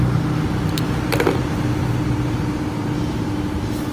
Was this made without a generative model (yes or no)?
yes